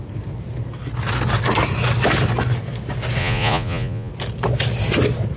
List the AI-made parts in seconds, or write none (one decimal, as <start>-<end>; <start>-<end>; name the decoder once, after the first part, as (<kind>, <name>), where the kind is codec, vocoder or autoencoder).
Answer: 3.2-4.1 (vocoder, Vocos)